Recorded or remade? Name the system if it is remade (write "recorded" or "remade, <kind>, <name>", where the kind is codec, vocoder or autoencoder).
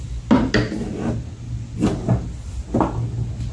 recorded